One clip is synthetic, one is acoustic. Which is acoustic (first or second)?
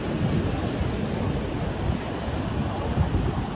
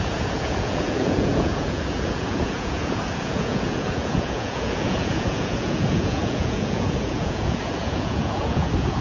first